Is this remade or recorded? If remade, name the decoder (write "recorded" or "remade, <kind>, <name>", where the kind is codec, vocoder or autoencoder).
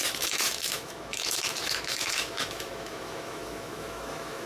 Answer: remade, autoencoder, DAC-VAE